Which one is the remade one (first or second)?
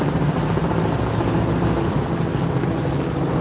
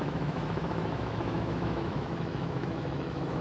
second